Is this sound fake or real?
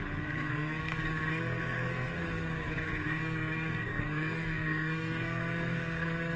fake